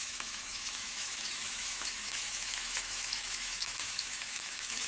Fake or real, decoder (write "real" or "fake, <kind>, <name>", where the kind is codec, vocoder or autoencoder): fake, autoencoder, DAC-VAE